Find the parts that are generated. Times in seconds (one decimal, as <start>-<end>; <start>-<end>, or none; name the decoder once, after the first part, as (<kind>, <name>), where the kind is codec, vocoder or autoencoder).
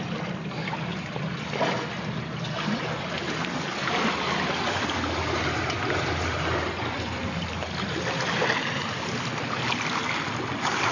none